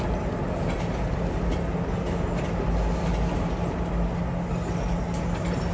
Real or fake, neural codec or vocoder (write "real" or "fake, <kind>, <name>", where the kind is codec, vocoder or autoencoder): real